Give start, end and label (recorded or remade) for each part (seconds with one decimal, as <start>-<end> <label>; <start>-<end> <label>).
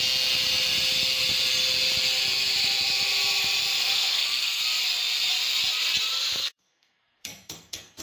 0.0-3.8 recorded; 3.8-4.6 remade; 4.6-6.4 recorded; 6.4-8.0 remade